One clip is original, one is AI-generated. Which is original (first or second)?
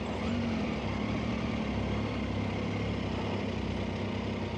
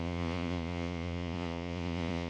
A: first